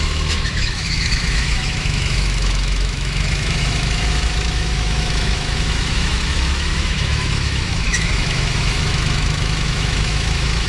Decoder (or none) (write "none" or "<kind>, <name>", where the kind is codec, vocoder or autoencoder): autoencoder, DAC-VAE